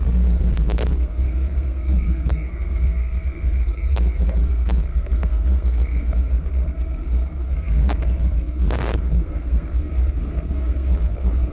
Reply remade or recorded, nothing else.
remade